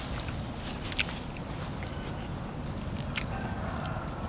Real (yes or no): yes